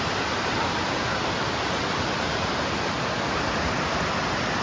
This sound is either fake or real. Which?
real